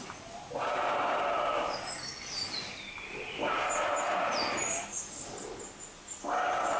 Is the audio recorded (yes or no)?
yes